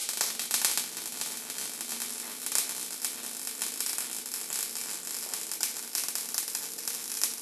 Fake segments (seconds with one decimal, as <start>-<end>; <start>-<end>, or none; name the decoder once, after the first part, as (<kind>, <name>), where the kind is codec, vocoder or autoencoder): none